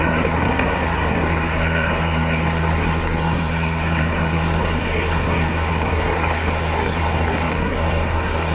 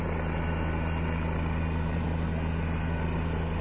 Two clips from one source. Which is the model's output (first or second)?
first